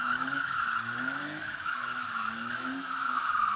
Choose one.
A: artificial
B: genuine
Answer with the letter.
A